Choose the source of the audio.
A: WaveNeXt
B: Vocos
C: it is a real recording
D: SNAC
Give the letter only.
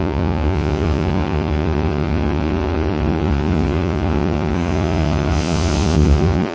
B